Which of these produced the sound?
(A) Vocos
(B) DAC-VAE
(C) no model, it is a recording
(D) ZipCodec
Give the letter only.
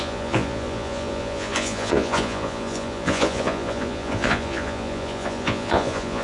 A